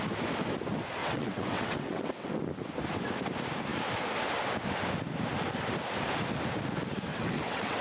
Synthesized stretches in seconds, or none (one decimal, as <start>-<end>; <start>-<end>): 1.0-2.3; 7.1-7.8